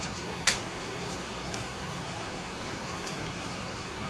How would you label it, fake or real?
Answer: fake